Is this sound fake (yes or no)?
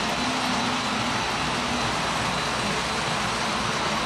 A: no